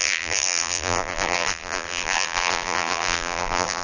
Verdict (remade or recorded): remade